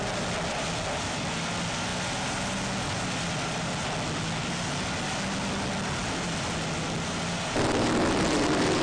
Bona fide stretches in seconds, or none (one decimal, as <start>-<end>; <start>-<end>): 0.0-8.8